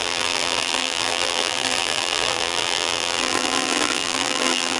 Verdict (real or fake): fake